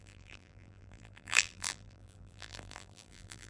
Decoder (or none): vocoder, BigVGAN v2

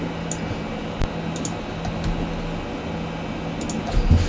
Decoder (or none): none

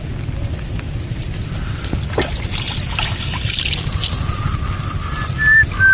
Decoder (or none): none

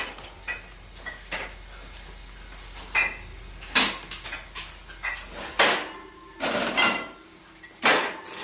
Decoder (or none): none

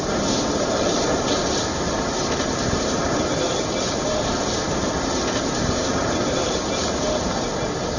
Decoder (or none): vocoder, BigVGAN v2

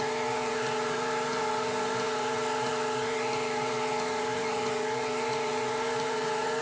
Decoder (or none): vocoder, BigVGAN v2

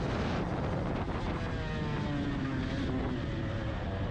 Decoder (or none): none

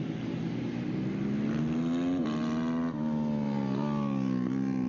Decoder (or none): none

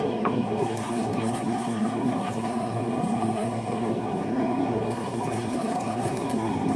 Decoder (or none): codec, SNAC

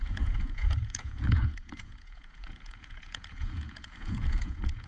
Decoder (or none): vocoder, Vocos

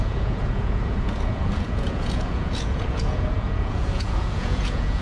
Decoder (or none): vocoder, Vocos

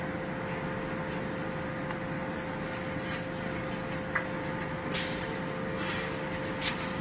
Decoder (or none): none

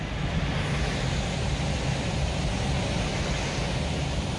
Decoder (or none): none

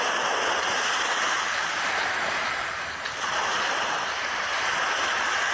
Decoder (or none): none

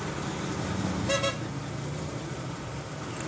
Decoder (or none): none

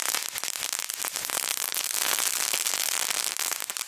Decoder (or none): none